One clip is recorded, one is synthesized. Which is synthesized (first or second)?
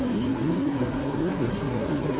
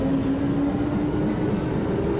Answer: first